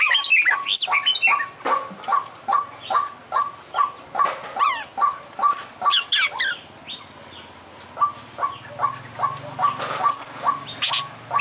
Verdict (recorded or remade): recorded